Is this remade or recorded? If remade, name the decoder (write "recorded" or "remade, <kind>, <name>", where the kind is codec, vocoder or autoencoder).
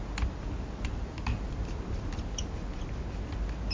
recorded